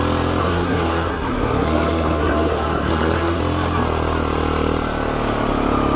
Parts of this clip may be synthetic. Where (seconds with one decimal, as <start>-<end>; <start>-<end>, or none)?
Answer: 0.4-3.4